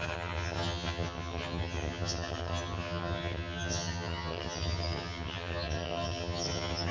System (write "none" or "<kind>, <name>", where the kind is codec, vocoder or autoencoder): vocoder, HiFi-GAN